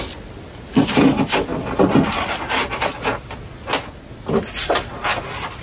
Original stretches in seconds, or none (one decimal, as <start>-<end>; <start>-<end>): 0.0-5.6